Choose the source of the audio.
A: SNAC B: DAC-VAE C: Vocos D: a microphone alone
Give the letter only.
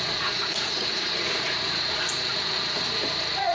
C